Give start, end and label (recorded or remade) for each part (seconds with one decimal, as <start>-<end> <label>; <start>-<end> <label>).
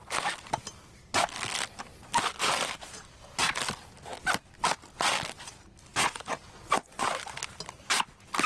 0.0-5.9 recorded; 5.9-7.2 remade; 7.2-8.5 recorded